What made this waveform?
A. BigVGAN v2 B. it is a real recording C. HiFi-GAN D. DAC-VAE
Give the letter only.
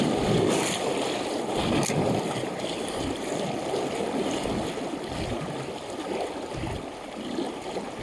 B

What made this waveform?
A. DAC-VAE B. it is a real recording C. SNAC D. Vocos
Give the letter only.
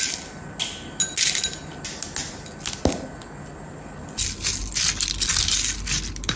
B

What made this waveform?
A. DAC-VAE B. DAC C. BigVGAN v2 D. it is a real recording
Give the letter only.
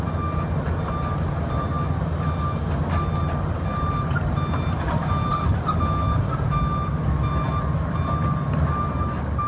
D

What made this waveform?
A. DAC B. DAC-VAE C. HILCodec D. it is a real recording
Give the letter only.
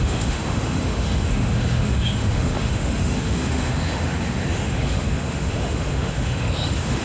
B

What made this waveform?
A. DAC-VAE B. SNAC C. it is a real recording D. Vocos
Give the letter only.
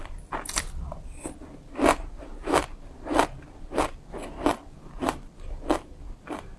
C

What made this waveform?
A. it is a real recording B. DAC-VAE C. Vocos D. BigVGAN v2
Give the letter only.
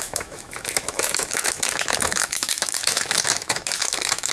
B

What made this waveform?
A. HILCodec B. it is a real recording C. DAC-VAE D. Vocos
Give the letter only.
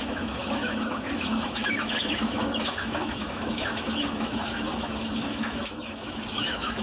C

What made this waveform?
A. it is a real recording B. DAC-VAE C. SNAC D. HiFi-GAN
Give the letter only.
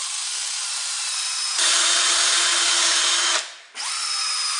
A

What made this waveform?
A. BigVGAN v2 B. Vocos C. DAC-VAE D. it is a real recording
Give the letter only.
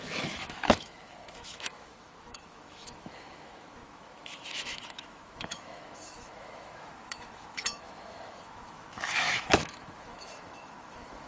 C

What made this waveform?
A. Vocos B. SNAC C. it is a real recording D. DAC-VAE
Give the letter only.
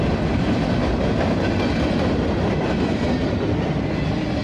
C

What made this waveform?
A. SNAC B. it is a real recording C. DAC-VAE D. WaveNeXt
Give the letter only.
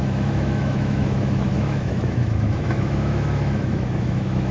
C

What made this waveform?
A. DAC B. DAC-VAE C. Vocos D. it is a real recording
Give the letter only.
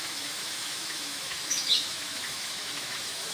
B